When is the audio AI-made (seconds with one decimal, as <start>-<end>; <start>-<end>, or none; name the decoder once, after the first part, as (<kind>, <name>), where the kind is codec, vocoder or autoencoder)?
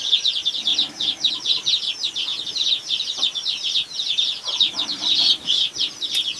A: 0.7-1.3 (vocoder, BigVGAN v2); 2.3-6.4